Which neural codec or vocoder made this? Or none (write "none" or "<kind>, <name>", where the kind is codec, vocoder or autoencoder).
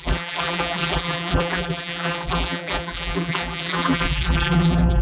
vocoder, BigVGAN v2